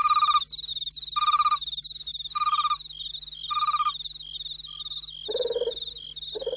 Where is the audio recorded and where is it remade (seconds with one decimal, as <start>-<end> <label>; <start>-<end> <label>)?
0.0-6.6 recorded